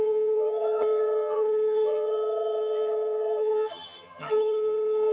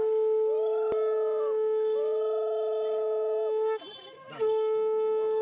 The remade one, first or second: first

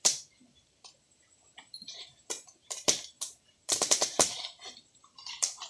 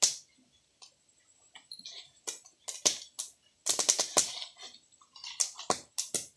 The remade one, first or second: first